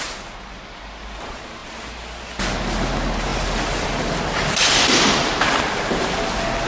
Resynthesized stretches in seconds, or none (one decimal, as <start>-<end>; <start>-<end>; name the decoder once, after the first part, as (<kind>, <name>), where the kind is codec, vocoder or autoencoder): none